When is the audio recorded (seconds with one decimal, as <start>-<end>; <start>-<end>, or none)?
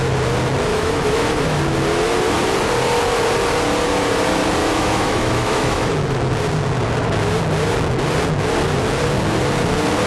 0.0-0.7; 1.6-4.6; 6.2-10.1